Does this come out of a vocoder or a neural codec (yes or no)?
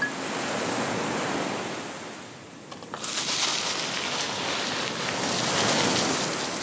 no